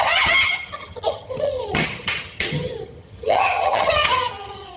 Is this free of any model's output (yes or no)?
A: no